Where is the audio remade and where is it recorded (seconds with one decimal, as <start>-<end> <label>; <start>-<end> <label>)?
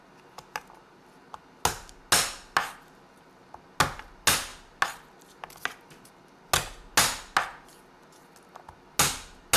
0.0-9.6 recorded